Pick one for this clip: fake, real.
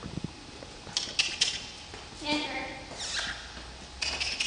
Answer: real